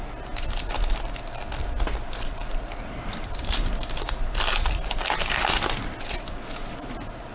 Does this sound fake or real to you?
real